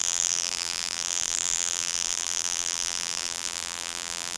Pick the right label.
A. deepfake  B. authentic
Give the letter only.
A